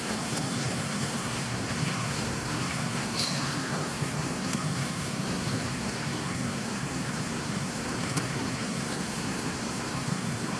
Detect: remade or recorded remade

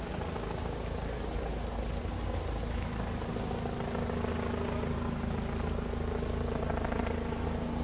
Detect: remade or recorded recorded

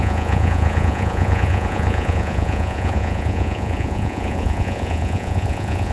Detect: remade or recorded remade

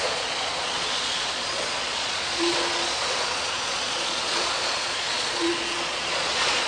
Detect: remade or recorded remade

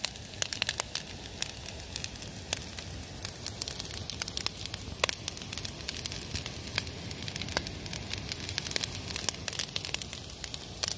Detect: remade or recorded recorded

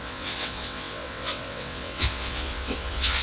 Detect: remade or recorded remade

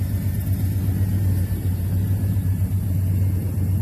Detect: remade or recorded recorded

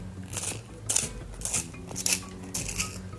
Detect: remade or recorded recorded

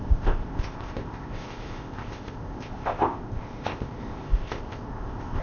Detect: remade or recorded remade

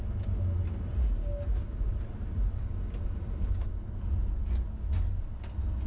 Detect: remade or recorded recorded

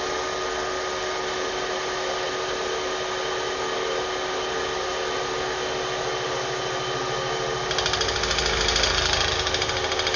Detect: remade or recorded recorded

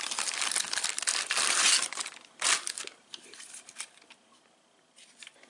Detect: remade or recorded recorded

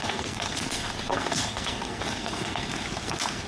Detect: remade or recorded remade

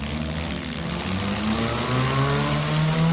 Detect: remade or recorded recorded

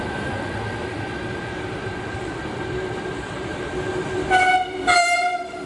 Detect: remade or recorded remade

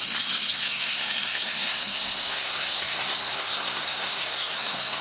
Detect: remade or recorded remade